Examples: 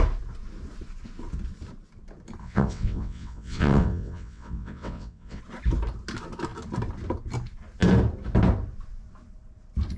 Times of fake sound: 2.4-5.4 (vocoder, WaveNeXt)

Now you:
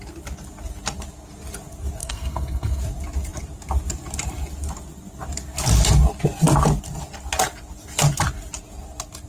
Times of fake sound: 2.0-2.8 (codec, SNAC)

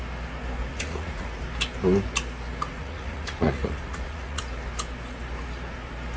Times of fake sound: 0.7-1.4 (vocoder, Vocos); 2.7-4.4

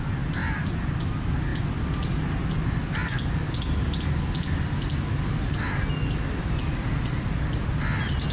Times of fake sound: none